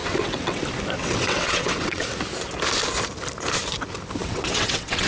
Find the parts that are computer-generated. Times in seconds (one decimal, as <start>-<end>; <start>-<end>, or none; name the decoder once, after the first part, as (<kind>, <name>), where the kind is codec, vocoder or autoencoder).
0.0-0.6 (vocoder, WaveNeXt); 1.0-2.1; 4.2-5.1